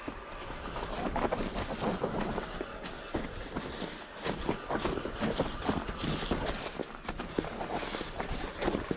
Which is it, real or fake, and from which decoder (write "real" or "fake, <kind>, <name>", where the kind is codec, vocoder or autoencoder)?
real